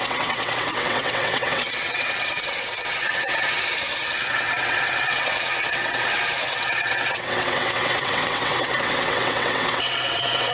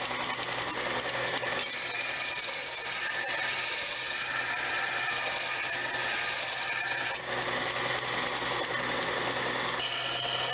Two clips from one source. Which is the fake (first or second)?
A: first